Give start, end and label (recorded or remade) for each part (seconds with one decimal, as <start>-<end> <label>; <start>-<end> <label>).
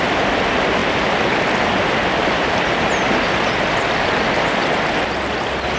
0.0-5.8 recorded